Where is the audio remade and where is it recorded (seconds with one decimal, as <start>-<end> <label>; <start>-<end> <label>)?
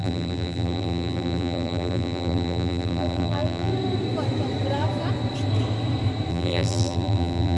0.0-3.7 remade; 3.7-6.3 recorded; 6.3-7.6 remade